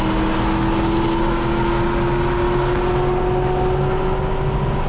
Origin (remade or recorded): recorded